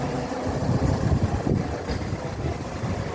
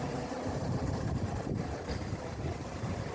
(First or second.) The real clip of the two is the first